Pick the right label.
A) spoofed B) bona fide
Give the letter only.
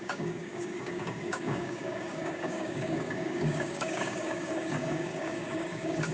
A